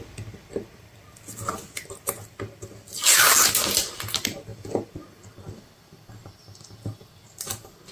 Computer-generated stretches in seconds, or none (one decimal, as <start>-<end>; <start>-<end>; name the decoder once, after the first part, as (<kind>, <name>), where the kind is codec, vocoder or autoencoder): none